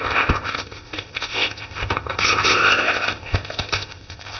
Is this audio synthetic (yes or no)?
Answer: yes